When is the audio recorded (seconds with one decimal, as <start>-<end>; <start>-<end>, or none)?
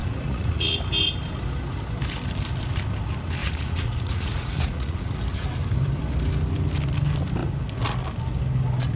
0.8-3.4; 5.2-9.0